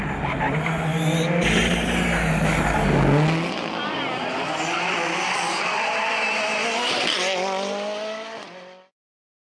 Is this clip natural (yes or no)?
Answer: yes